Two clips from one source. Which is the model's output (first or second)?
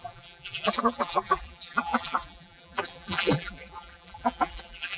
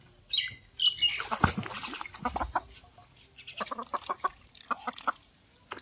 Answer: first